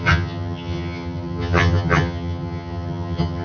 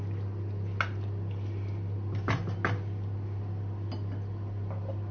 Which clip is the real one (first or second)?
second